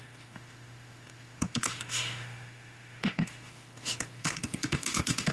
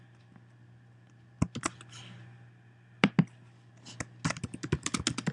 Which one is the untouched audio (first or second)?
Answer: second